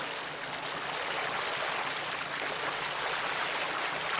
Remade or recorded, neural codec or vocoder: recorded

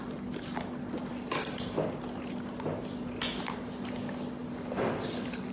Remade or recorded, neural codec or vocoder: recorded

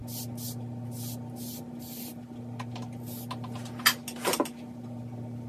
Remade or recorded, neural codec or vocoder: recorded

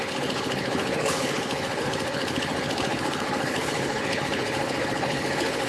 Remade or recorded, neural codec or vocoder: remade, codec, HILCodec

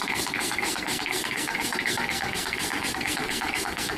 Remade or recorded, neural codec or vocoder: remade, codec, SNAC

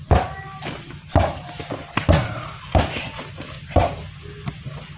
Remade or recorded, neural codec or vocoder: recorded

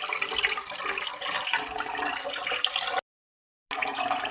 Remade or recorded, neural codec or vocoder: recorded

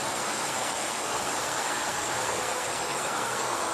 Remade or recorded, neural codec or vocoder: remade, codec, SNAC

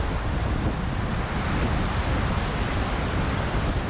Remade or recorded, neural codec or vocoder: recorded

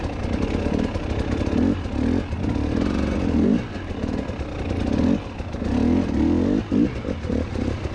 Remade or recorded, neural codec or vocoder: recorded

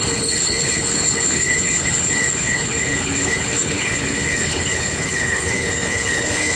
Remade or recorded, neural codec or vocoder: remade, codec, HILCodec